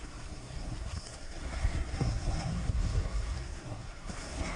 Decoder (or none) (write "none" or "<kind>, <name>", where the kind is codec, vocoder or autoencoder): codec, SNAC